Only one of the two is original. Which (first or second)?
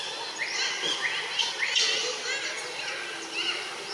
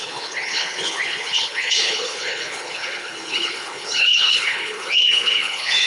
first